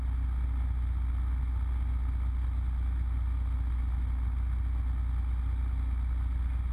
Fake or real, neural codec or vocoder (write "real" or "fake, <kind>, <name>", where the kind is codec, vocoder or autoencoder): real